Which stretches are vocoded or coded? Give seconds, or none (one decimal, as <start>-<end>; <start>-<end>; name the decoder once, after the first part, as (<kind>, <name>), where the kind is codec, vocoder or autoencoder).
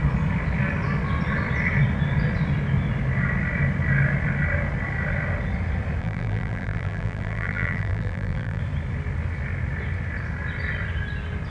6.0-8.6 (vocoder, BigVGAN v2)